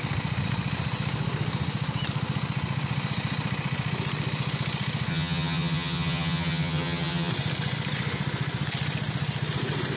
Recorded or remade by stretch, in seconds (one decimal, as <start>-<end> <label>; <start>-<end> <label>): 0.0-5.1 recorded; 5.1-7.3 remade; 7.3-10.0 recorded